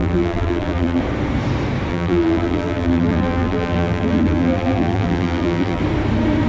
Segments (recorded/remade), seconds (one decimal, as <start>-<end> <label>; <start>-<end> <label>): 0.0-1.0 remade; 1.0-1.9 recorded; 1.9-5.8 remade; 5.8-6.5 recorded